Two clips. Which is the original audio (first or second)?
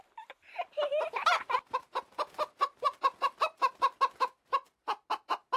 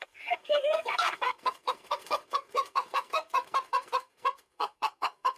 first